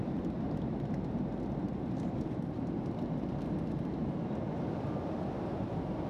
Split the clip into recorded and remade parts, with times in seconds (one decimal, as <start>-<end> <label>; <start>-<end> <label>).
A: 0.0-4.0 recorded; 4.0-6.1 remade